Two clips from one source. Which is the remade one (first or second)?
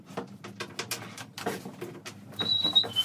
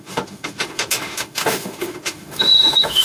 second